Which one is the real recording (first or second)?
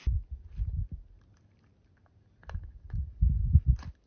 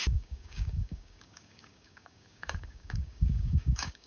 first